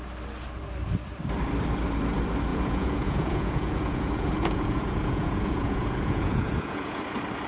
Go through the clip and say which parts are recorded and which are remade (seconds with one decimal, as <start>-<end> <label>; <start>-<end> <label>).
0.0-2.5 recorded; 2.5-7.0 remade; 7.0-7.5 recorded